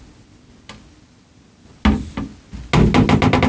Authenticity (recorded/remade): recorded